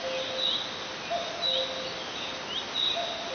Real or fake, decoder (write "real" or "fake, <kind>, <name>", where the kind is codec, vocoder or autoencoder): real